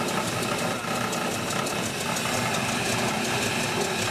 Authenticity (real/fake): real